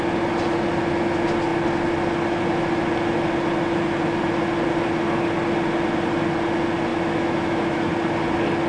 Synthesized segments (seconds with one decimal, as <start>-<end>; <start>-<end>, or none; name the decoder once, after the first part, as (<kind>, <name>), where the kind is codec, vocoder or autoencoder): 6.9-7.9 (autoencoder, DAC-VAE)